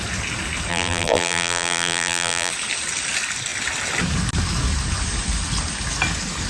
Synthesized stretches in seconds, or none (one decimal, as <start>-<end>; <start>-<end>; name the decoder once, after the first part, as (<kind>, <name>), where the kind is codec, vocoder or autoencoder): 0.7-2.5 (vocoder, BigVGAN v2)